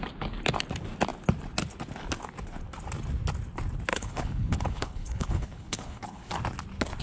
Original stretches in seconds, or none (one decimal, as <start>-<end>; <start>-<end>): 0.0-3.9; 6.3-7.0